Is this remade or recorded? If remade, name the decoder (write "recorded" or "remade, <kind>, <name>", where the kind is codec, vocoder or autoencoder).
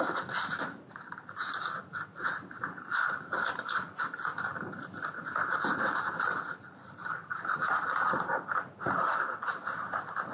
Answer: recorded